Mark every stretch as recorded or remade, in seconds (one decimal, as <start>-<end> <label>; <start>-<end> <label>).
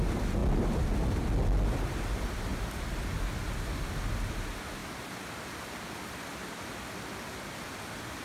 0.0-8.2 recorded